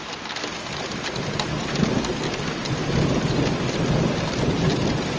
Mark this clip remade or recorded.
recorded